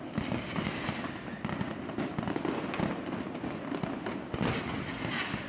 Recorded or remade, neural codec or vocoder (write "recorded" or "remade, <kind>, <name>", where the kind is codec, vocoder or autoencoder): recorded